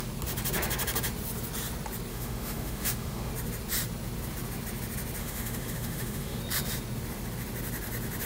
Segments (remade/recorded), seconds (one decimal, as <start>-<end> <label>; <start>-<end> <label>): 0.0-2.1 recorded; 2.1-3.3 remade; 3.3-5.2 recorded; 5.2-6.4 remade; 6.4-8.3 recorded